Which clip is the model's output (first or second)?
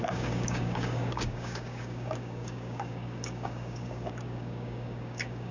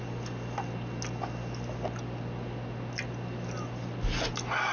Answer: first